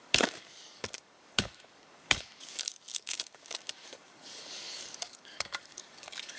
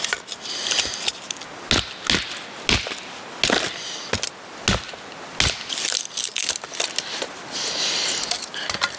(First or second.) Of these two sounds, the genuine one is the second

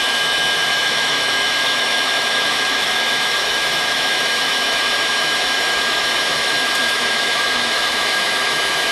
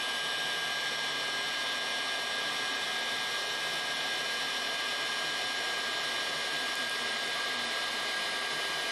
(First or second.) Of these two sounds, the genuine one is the second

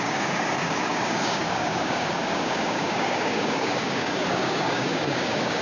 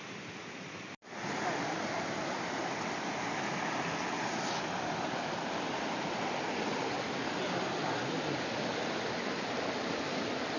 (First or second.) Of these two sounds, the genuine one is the second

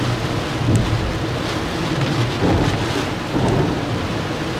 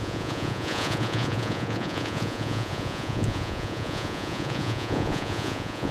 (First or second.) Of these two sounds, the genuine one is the first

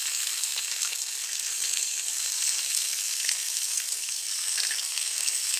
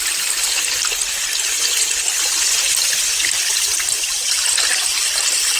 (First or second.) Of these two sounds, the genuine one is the second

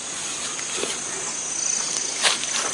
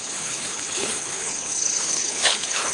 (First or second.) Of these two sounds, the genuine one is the first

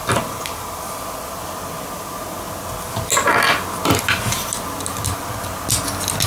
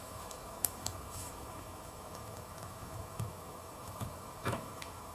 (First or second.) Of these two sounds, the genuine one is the first